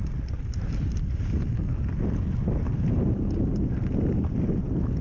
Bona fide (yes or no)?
yes